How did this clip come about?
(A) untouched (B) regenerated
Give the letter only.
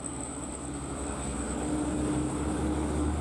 B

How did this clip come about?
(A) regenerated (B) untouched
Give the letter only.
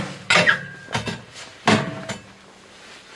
B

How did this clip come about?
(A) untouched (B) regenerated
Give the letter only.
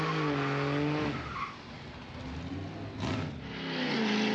A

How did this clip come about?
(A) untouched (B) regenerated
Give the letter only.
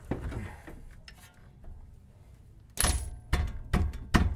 A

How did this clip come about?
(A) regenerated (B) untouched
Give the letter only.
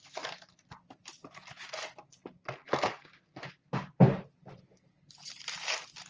B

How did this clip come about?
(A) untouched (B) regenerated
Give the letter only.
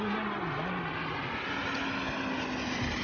A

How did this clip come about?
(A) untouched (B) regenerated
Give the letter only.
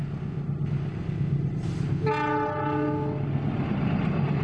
A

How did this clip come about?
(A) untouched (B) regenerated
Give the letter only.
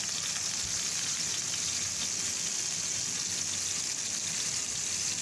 A